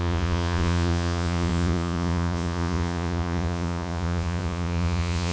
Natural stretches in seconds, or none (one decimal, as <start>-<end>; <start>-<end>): none